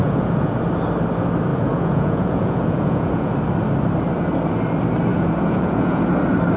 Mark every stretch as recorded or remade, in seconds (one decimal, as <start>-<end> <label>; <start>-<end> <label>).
0.0-0.6 remade; 0.6-1.5 recorded; 1.5-3.3 remade; 3.3-5.1 recorded; 5.1-6.0 remade; 6.0-6.6 recorded